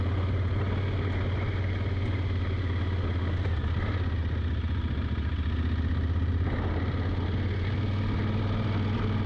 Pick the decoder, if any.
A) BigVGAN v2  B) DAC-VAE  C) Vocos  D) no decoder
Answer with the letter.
D